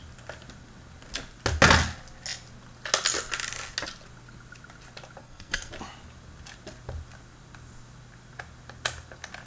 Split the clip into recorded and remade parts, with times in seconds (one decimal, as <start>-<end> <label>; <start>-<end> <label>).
0.0-5.2 recorded; 5.2-5.7 remade; 5.7-9.5 recorded